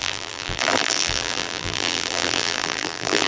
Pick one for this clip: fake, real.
fake